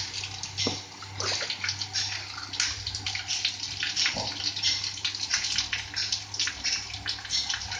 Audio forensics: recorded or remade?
recorded